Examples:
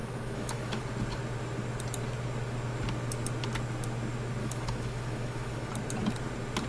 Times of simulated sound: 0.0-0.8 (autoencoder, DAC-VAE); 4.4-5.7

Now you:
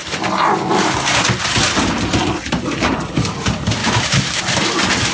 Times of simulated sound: 3.8-4.4 (autoencoder, DAC-VAE)

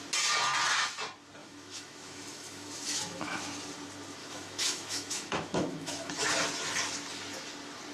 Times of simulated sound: 1.4-3.4 (autoencoder, DAC-VAE); 4.2-6.1

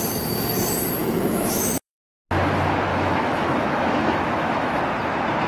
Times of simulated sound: 1.0-2.0 (autoencoder, DAC-VAE); 2.9-4.8